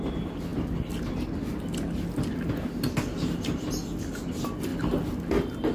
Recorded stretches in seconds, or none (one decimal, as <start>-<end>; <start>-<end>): 0.0-5.7